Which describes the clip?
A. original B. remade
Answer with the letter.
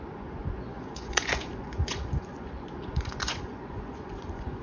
B